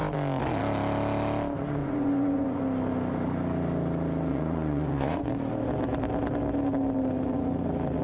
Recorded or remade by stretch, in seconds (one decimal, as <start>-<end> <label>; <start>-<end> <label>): 0.0-1.8 recorded; 1.8-2.6 remade; 2.6-4.3 recorded; 4.3-5.3 remade; 5.3-8.0 recorded